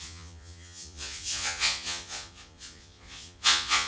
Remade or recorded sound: remade